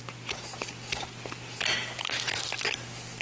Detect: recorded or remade recorded